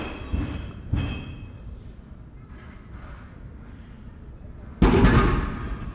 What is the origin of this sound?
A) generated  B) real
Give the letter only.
B